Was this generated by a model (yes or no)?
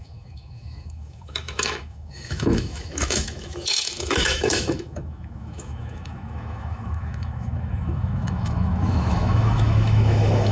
yes